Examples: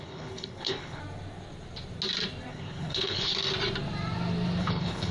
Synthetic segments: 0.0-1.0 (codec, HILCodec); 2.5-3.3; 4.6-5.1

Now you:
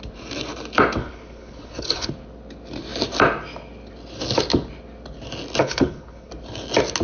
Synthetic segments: 1.0-2.1 (codec, HILCodec); 5.6-6.3

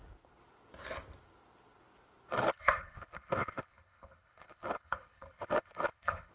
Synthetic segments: 2.3-6.3 (codec, HILCodec)

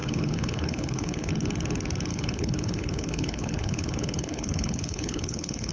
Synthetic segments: 0.0-1.3 (codec, HILCodec); 2.1-5.7